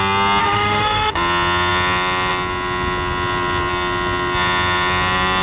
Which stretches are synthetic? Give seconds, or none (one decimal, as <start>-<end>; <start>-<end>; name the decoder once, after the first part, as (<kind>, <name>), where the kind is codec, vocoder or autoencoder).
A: 0.4-1.1 (autoencoder, DAC-VAE)